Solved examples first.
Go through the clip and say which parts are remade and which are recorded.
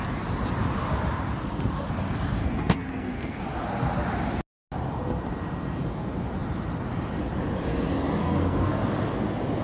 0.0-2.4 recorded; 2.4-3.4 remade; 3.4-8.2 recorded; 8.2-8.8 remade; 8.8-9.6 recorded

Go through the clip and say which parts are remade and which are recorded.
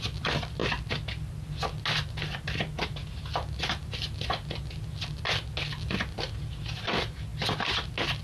0.0-8.2 recorded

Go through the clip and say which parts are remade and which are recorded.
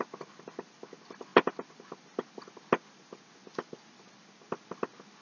0.0-5.2 recorded